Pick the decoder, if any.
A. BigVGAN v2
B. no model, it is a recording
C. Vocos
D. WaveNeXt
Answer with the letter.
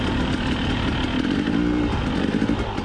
B